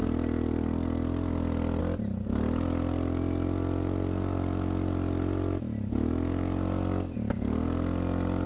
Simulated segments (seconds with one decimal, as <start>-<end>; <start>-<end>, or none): none